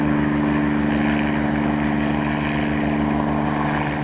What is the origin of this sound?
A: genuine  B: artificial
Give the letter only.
A